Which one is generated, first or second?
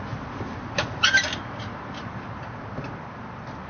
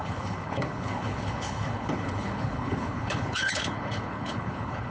second